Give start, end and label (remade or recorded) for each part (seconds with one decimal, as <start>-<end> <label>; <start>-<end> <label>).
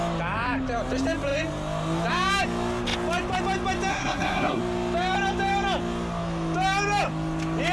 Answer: 0.0-3.9 recorded; 3.9-4.6 remade; 4.6-7.7 recorded